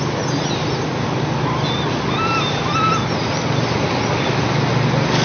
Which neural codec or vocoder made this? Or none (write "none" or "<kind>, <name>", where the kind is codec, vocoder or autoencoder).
none